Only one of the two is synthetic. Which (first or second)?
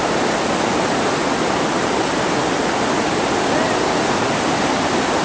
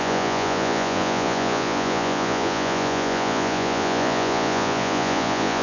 second